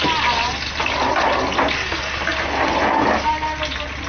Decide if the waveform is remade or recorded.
recorded